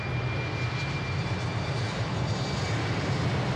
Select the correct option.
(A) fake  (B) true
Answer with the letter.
B